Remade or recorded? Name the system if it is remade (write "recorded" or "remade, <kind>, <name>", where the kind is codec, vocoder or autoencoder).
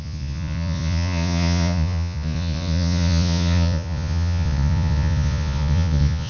remade, vocoder, Vocos